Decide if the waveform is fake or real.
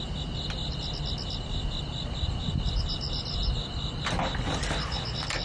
real